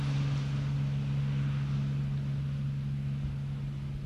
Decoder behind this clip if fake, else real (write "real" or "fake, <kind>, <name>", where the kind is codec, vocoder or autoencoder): real